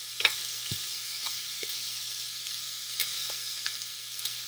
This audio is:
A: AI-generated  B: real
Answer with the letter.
A